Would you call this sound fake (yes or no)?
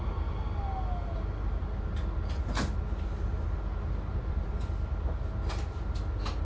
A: no